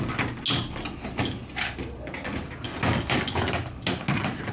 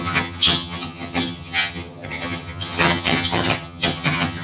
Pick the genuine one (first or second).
first